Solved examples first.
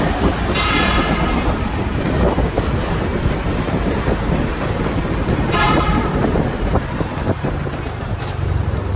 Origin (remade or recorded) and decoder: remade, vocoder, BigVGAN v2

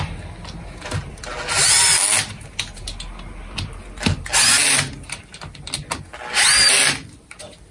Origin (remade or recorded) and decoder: recorded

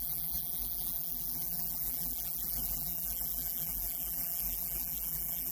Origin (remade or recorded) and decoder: remade, vocoder, BigVGAN v2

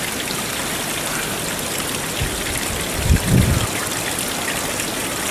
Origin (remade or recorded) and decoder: recorded